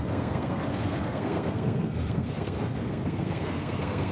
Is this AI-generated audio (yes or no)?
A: yes